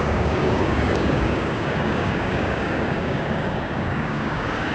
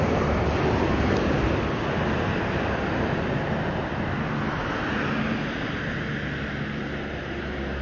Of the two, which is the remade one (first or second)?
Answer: first